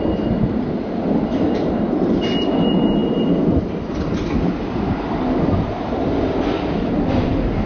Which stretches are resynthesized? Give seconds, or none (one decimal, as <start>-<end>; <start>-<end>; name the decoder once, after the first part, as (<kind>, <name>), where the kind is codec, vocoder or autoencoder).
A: 0.0-7.7 (vocoder, BigVGAN v2)